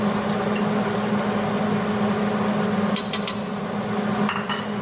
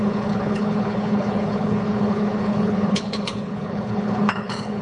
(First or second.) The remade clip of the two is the second